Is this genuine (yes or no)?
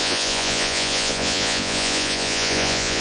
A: no